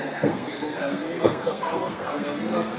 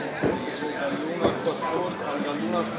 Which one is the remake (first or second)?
first